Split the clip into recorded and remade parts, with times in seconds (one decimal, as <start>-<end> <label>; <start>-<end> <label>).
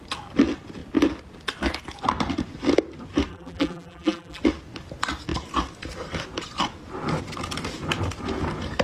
0.0-3.3 recorded; 3.3-4.4 remade; 4.4-8.8 recorded